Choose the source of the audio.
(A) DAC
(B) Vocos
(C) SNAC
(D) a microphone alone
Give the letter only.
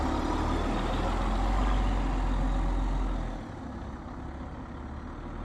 D